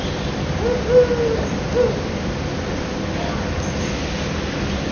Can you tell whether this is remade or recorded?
recorded